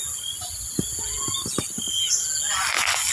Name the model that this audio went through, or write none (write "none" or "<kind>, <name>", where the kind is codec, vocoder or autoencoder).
none